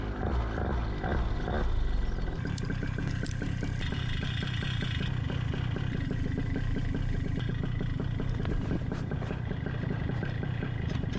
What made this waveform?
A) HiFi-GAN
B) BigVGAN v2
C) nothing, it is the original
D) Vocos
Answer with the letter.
C